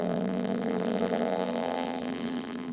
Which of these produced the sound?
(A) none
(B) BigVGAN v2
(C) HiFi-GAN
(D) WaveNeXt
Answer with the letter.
B